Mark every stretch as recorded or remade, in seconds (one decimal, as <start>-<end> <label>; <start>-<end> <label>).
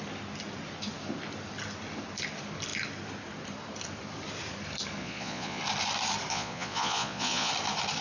0.0-5.0 recorded; 5.0-5.6 remade; 5.6-6.3 recorded; 6.3-7.5 remade; 7.5-8.0 recorded